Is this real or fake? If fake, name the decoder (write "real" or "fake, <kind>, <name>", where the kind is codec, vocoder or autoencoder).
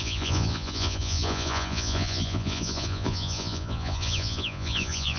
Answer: fake, vocoder, Vocos